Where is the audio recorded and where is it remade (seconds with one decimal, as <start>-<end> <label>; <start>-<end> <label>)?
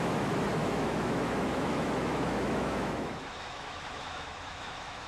0.0-5.1 remade